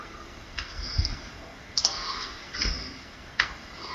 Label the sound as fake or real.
fake